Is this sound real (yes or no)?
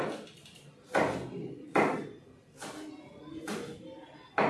yes